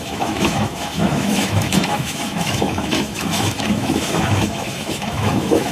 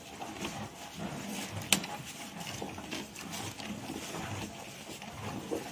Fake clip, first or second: first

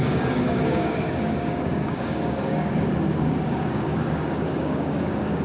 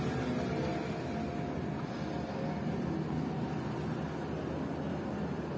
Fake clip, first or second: first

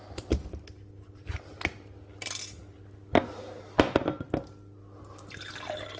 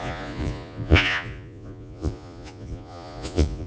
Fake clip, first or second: second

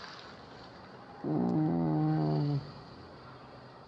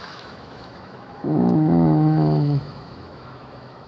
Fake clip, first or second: second